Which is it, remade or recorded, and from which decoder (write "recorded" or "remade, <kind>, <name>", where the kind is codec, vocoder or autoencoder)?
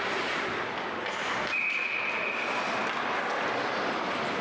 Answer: recorded